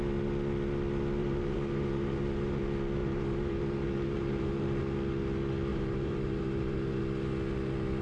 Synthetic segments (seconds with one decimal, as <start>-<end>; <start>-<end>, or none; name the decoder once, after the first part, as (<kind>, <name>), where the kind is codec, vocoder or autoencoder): 1.2-2.6 (vocoder, BigVGAN v2); 3.0-4.8; 5.7-7.0